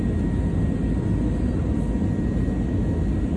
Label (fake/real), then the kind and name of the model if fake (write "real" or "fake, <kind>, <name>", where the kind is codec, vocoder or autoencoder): real